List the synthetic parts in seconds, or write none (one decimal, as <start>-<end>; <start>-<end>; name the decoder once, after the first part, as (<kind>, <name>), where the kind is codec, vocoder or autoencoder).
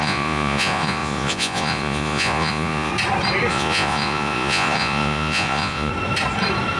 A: 0.0-2.9 (vocoder, Vocos); 3.5-5.9